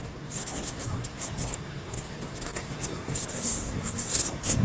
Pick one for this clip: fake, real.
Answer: fake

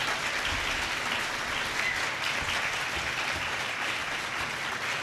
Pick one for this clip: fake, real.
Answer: real